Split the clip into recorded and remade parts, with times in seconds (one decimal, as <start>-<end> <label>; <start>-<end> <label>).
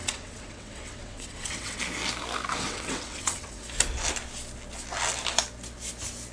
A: 0.0-1.8 remade; 1.8-2.5 recorded; 2.5-3.6 remade; 3.6-6.3 recorded